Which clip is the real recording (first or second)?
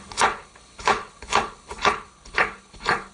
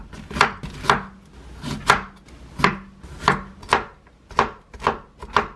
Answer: second